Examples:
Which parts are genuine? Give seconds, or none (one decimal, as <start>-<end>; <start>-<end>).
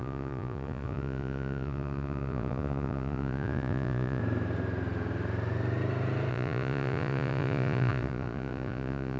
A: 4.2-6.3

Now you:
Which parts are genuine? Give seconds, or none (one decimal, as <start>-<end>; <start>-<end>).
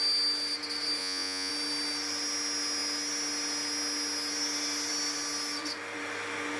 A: 0.0-1.0; 1.5-6.6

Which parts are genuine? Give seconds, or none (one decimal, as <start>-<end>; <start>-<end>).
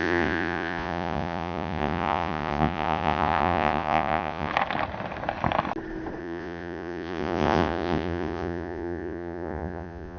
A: 4.5-6.2